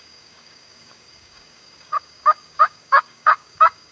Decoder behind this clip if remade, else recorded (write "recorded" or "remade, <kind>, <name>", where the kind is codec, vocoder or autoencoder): remade, codec, DAC